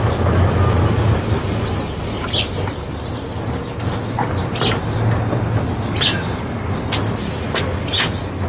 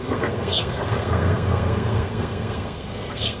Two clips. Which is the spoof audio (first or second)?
second